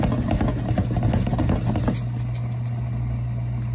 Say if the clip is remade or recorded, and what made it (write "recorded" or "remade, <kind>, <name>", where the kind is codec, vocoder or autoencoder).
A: recorded